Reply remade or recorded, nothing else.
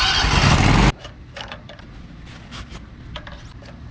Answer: recorded